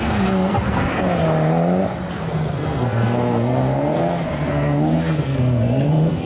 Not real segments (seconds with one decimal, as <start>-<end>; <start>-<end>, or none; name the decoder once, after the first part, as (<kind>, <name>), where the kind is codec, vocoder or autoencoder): 0.0-1.2 (codec, SNAC); 2.1-6.2